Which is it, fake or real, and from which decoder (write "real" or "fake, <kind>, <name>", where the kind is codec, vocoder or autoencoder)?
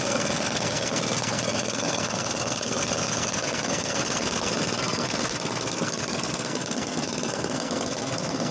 fake, codec, SNAC